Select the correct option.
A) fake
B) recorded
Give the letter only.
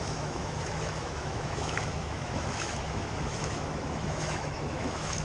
A